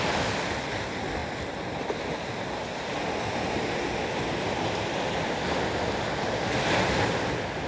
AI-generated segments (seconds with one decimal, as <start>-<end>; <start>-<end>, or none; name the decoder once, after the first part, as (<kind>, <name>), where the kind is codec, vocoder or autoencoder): none